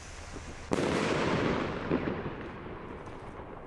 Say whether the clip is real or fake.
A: real